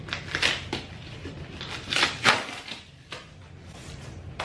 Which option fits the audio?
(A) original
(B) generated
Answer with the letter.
A